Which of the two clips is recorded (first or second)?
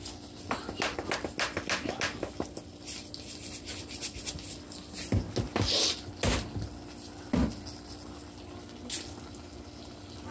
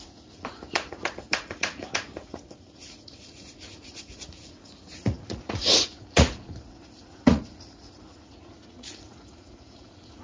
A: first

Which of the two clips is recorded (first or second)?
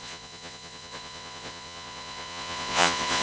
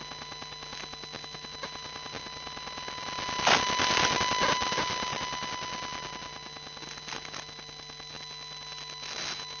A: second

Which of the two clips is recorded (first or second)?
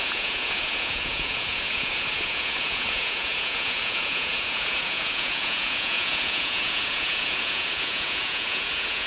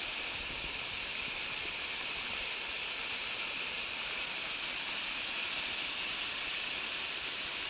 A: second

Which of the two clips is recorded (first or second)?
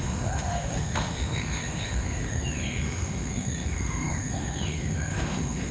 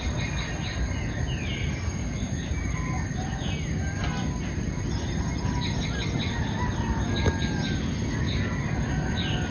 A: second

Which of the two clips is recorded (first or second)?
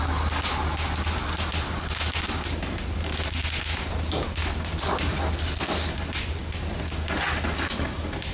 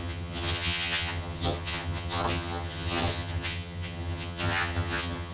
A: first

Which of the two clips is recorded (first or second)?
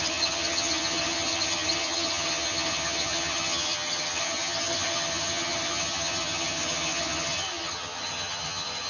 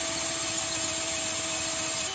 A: second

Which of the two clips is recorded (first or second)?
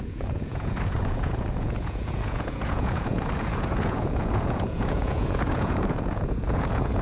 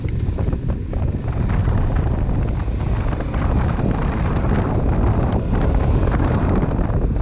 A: second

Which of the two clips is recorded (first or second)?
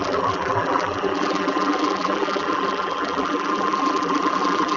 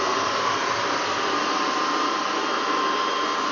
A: second